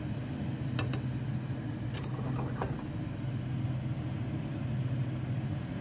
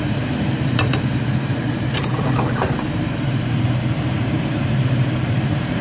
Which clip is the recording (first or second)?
first